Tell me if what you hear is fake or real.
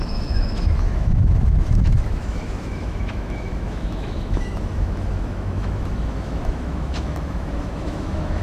fake